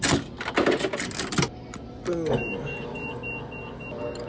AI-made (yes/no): no